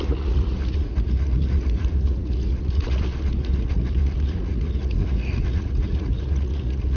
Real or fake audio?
fake